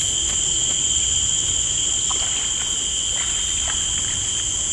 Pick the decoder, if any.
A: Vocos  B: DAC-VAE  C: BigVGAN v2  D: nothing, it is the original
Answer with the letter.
D